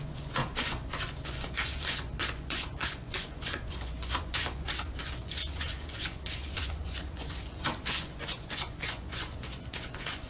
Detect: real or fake fake